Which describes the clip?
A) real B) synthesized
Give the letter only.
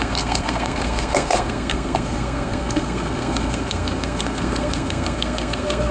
B